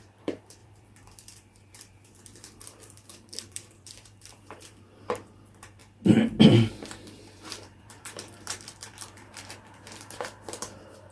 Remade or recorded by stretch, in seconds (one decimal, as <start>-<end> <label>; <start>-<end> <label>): 0.0-5.8 remade; 5.8-6.7 recorded; 6.7-11.1 remade